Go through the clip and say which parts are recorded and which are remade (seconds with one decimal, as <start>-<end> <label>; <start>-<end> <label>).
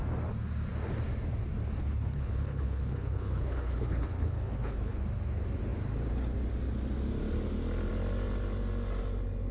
0.0-1.8 recorded; 1.8-5.0 remade; 5.0-9.5 recorded